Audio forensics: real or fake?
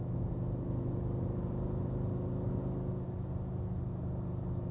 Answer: real